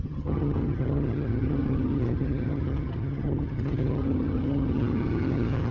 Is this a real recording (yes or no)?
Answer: no